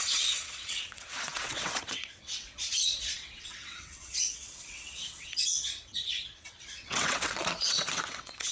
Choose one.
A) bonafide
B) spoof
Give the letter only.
B